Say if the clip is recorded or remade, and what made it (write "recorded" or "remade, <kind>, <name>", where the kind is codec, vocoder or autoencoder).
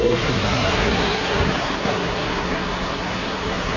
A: remade, codec, SNAC